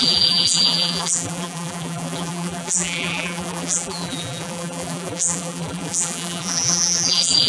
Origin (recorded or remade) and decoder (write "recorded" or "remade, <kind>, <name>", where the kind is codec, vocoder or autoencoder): remade, vocoder, BigVGAN v2